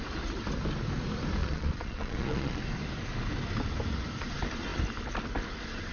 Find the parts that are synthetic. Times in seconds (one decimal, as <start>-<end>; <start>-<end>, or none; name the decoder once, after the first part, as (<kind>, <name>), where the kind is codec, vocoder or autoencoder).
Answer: 1.4-2.6 (vocoder, Vocos)

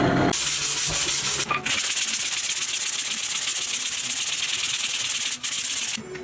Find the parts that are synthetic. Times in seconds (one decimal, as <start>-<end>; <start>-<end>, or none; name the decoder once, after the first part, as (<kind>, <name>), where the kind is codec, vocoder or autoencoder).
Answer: none

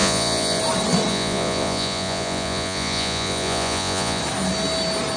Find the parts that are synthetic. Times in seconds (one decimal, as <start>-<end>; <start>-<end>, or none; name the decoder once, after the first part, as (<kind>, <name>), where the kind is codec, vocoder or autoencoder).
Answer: 0.0-0.6 (vocoder, Vocos); 1.1-4.2

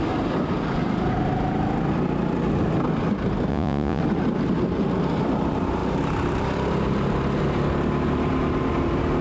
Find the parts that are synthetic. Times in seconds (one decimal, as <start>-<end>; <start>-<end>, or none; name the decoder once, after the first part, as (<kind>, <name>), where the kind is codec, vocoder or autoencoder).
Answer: 3.5-4.0 (vocoder, Vocos)

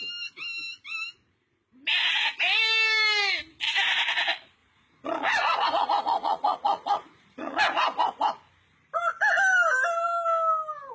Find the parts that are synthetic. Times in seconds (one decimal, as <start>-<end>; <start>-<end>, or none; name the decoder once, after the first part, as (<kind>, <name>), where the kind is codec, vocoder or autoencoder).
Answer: 4.6-7.6 (vocoder, Vocos)

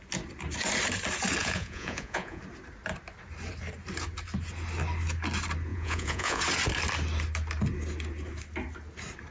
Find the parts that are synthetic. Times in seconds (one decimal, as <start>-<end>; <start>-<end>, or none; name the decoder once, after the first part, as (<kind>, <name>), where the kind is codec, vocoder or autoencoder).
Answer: 1.4-2.4 (vocoder, Vocos); 5.7-6.4

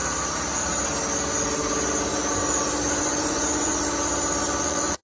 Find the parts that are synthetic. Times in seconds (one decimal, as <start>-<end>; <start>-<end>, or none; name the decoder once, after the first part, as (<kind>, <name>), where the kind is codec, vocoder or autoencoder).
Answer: 3.0-3.7 (vocoder, Vocos); 4.6-5.0

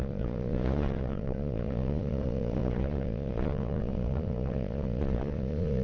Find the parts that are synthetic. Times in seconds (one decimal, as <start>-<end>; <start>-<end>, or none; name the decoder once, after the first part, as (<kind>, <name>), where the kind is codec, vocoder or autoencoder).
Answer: 0.0-5.8 (vocoder, Vocos)